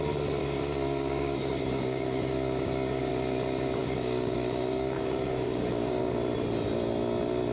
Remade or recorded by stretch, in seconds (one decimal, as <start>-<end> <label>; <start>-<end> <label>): 0.0-0.4 recorded; 0.4-3.1 remade; 3.1-3.8 recorded; 3.8-6.0 remade; 6.0-7.5 recorded